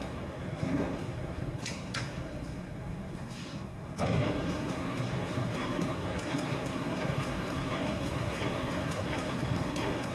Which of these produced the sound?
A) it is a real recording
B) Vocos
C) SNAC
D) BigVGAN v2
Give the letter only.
C